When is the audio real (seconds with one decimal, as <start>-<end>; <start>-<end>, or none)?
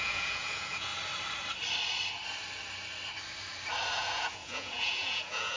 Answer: 0.9-3.9